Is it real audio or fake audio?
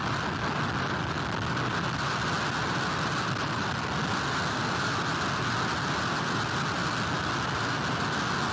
real